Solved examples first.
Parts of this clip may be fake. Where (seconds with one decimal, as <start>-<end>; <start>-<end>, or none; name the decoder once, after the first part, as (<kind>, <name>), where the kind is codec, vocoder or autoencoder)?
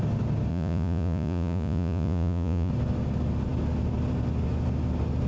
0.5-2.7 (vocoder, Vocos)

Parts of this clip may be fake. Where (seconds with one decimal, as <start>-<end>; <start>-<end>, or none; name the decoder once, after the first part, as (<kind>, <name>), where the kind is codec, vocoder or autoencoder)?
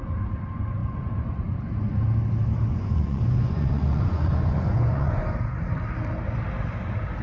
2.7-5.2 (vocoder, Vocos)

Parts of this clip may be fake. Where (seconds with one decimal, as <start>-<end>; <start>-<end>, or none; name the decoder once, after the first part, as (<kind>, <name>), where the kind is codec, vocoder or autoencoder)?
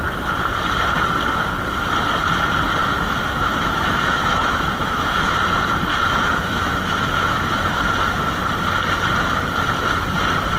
2.8-5.3 (autoencoder, DAC-VAE); 5.9-7.8